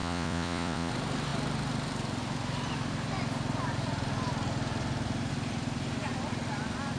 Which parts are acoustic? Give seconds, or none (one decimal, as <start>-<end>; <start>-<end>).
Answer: 0.9-7.0